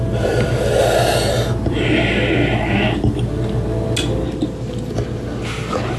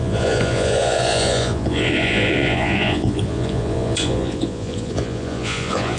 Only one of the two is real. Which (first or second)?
first